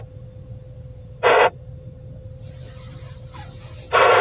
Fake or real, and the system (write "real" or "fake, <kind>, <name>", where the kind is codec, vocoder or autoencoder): real